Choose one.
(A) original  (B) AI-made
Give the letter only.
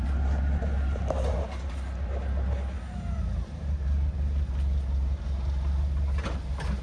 A